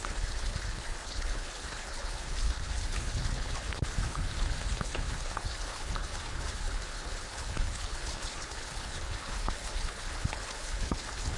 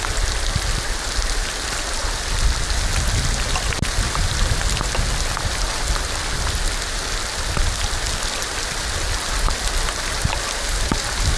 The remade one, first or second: first